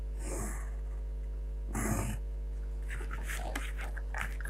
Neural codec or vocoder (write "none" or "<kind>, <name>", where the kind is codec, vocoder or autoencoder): none